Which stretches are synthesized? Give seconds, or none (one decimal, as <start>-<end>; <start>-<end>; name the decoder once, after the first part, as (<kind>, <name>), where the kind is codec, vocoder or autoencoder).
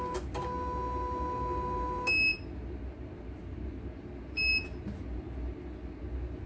none